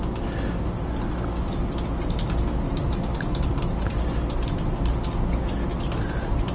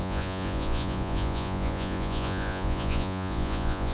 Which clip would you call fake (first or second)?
second